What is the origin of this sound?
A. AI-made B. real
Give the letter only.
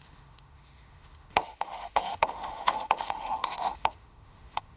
A